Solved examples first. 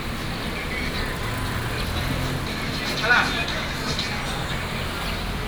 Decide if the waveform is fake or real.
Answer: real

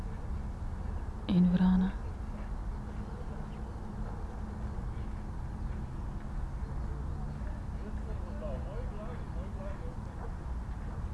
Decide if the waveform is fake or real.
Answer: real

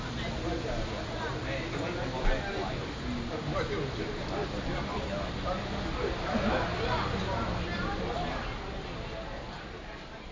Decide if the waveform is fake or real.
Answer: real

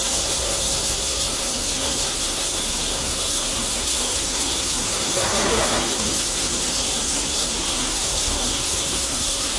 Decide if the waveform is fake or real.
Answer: fake